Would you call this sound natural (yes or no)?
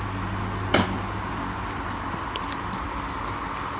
yes